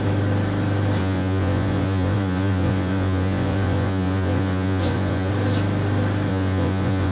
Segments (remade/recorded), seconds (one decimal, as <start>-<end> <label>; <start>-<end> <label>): 0.0-1.0 recorded; 1.0-5.3 remade; 5.3-6.3 recorded; 6.3-7.1 remade